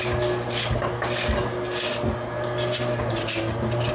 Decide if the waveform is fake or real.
real